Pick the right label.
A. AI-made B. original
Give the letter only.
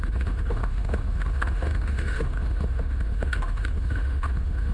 A